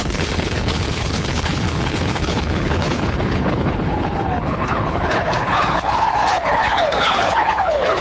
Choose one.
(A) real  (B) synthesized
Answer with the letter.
B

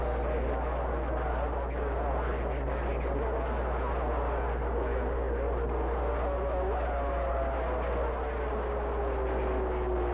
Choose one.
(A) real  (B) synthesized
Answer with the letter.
A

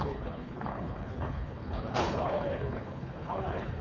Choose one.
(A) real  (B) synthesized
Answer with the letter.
B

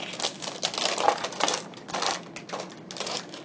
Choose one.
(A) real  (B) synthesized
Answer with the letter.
A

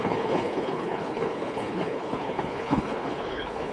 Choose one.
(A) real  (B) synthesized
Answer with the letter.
B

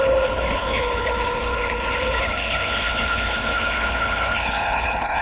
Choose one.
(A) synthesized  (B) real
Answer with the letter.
A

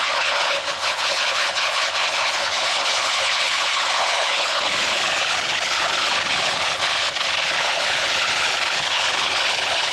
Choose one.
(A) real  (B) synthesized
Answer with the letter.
B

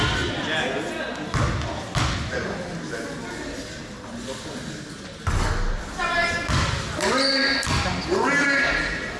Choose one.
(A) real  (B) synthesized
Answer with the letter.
A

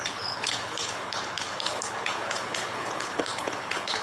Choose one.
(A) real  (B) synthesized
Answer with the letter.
B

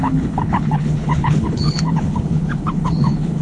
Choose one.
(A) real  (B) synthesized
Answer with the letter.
B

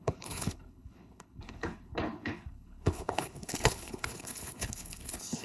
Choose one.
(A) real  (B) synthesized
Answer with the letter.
B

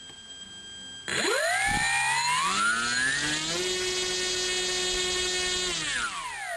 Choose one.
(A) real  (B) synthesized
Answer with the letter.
A